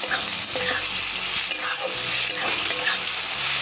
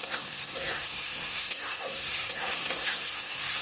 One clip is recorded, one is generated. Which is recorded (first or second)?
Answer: first